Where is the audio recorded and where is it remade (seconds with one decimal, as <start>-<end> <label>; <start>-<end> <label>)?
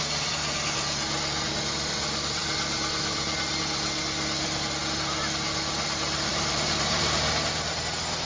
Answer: 0.0-6.3 recorded; 6.3-7.5 remade; 7.5-8.3 recorded